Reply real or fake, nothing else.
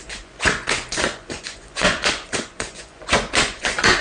fake